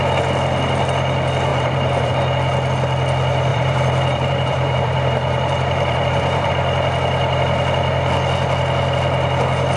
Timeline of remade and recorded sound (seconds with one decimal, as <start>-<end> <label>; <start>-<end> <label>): 0.0-1.5 recorded; 1.5-2.1 remade; 2.1-3.5 recorded; 3.5-6.5 remade; 6.5-9.8 recorded